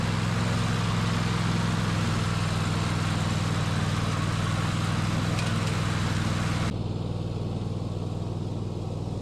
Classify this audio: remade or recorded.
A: recorded